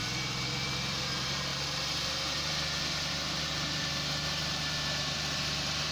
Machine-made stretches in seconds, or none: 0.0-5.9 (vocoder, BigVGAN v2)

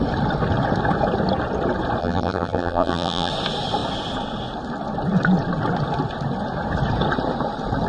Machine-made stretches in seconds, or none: 2.0-3.3 (vocoder, BigVGAN v2)

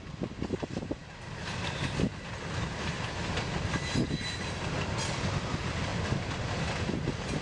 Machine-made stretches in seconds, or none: none

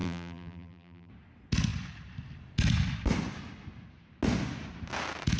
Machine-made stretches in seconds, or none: 0.0-1.1 (vocoder, BigVGAN v2)

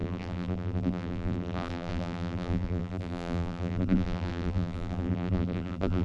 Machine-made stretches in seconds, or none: 0.0-6.0 (vocoder, BigVGAN v2)

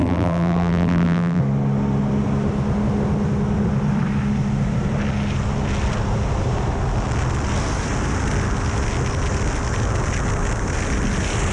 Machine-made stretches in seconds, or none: 0.0-1.4 (vocoder, BigVGAN v2)

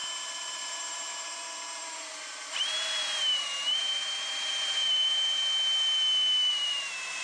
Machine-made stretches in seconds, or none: 0.0-5.4 (vocoder, BigVGAN v2); 6.5-7.2

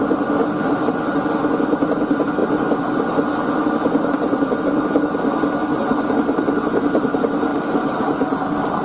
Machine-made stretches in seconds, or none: 0.4-0.9 (vocoder, BigVGAN v2)